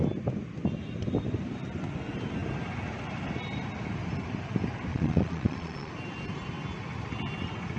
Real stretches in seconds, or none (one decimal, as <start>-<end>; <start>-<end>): 0.0-4.9; 5.9-7.8

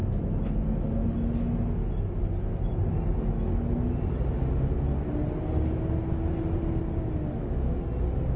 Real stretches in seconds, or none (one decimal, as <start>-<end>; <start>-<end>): 0.0-8.4

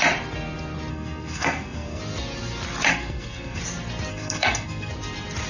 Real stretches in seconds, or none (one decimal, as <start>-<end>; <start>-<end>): 0.0-0.9; 2.0-2.9; 3.6-4.1; 4.9-5.5

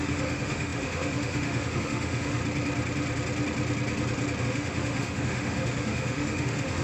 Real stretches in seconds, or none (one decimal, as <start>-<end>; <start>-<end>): 2.4-4.4

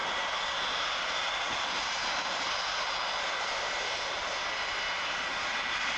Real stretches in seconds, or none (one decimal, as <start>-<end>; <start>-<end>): 0.0-1.2; 2.5-6.0

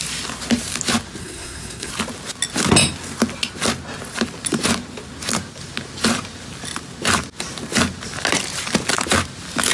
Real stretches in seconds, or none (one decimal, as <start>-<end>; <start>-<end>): 0.0-1.2; 1.9-9.7

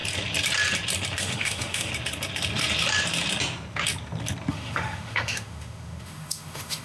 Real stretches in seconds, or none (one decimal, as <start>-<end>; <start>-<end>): 0.0-1.2; 1.9-4.5

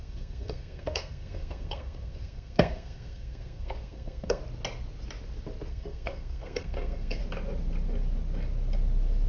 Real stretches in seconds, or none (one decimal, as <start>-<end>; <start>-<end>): 4.4-5.7; 7.2-9.3